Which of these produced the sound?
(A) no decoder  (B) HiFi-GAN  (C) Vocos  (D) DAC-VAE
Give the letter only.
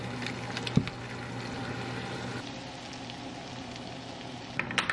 A